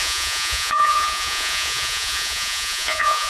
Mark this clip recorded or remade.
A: remade